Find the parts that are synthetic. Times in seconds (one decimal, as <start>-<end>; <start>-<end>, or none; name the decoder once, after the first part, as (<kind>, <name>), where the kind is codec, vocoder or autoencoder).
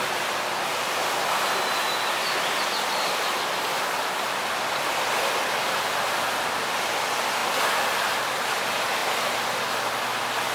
none